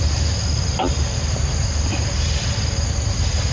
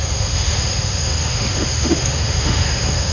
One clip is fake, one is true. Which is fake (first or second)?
second